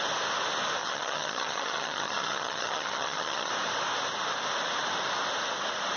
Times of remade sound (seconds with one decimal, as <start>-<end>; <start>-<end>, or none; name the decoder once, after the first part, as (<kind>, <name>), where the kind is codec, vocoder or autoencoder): 0.8-3.5 (vocoder, HiFi-GAN)